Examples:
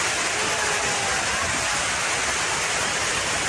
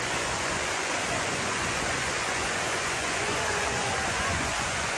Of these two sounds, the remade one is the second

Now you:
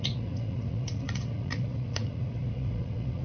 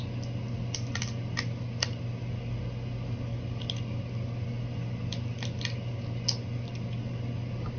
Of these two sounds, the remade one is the first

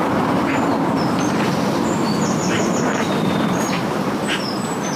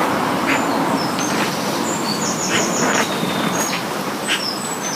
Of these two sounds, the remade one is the first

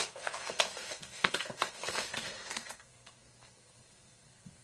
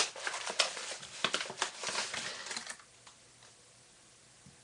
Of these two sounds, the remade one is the first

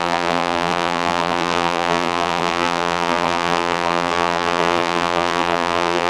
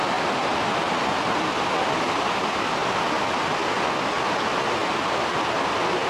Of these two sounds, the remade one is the first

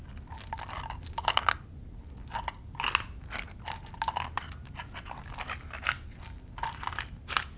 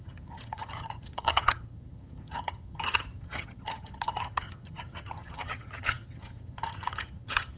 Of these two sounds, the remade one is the second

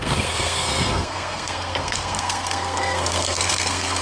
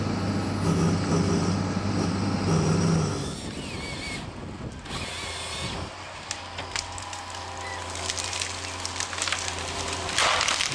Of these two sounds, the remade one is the first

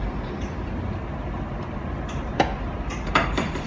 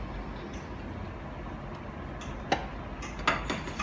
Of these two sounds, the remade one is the first